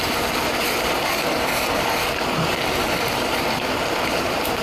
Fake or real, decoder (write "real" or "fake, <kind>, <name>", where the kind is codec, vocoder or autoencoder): fake, vocoder, BigVGAN v2